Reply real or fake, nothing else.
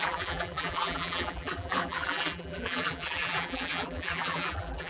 fake